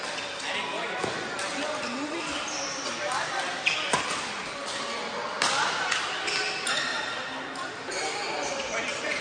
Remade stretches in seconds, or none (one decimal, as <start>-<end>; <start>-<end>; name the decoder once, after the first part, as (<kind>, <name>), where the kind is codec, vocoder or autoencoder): none

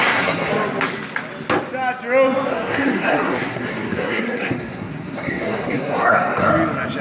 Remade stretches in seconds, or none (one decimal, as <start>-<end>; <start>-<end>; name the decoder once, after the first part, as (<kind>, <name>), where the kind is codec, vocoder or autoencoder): 0.0-0.5 (codec, SNAC); 2.5-6.5

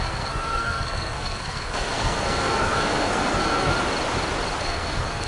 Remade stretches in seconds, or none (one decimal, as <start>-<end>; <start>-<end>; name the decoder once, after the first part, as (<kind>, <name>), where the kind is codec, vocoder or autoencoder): 0.0-3.7 (codec, SNAC); 4.6-5.3

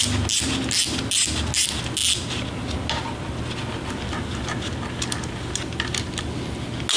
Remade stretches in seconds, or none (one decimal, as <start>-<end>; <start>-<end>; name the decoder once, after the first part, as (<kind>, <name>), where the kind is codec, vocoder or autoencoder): none

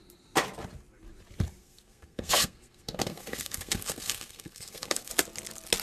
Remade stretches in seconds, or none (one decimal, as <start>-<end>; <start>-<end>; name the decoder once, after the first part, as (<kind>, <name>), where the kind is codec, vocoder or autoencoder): 1.6-5.1 (codec, SNAC)

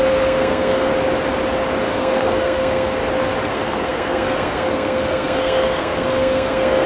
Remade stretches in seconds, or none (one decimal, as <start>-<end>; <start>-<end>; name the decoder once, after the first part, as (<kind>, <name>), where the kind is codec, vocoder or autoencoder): 0.0-0.9 (codec, SNAC); 2.0-3.0; 3.5-6.9